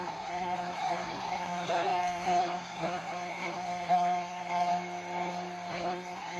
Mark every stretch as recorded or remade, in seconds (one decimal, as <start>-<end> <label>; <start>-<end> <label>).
0.0-4.7 remade; 4.7-5.7 recorded; 5.7-6.4 remade